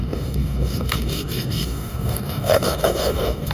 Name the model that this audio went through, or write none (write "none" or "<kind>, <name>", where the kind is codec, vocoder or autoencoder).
codec, DAC